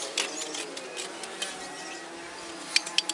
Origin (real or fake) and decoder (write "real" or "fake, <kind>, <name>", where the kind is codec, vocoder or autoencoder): real